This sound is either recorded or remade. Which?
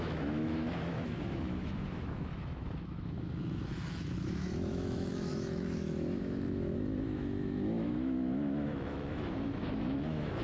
remade